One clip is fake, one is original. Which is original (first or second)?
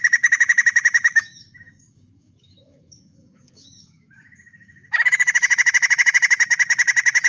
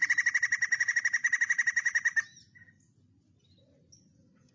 second